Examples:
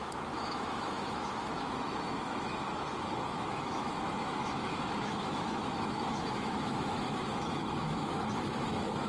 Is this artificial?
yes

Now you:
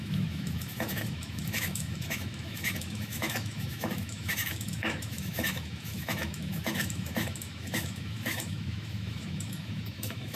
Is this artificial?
yes